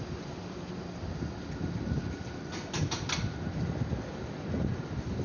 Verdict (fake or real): real